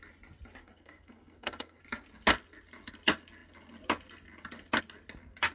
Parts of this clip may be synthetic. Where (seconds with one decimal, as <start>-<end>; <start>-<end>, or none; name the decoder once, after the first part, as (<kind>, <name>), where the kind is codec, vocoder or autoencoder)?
0.6-1.8 (codec, SNAC)